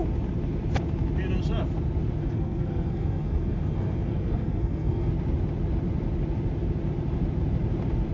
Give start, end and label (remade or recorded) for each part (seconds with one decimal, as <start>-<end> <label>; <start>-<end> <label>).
0.0-2.2 recorded; 2.2-5.1 remade; 5.1-8.1 recorded